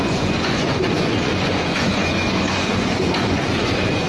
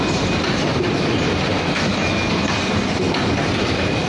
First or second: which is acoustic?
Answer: second